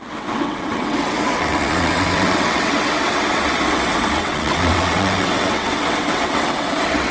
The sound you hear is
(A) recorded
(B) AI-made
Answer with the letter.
B